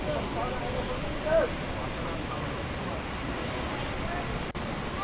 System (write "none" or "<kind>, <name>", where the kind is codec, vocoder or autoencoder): none